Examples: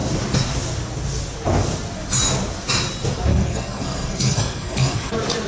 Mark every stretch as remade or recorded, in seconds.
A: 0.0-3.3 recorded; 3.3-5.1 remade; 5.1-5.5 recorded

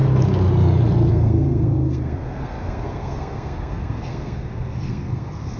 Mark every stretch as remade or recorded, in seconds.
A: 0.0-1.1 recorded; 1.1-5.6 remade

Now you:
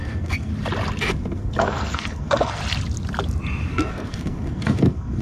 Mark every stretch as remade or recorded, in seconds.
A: 0.0-0.5 remade; 0.5-1.1 recorded; 1.1-2.6 remade; 2.6-3.7 recorded; 3.7-5.2 remade

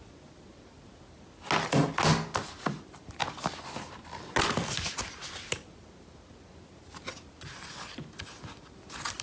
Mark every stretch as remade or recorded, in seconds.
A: 0.0-9.2 recorded

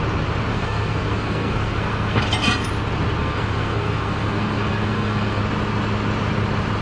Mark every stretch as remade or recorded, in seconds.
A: 0.0-0.5 recorded; 0.5-2.2 remade; 2.2-3.2 recorded; 3.2-5.4 remade; 5.4-6.8 recorded